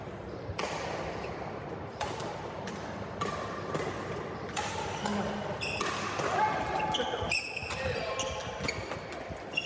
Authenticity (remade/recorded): recorded